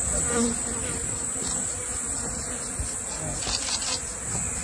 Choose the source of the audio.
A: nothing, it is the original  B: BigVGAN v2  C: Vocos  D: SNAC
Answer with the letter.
A